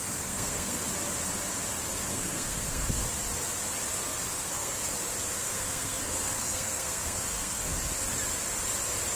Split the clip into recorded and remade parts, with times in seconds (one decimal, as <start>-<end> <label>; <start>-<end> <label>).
0.0-0.8 remade; 0.8-2.1 recorded; 2.1-3.0 remade; 3.0-4.3 recorded; 4.3-4.8 remade; 4.8-5.4 recorded; 5.4-7.7 remade; 7.7-9.2 recorded